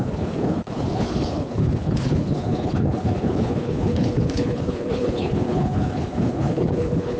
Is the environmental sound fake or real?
fake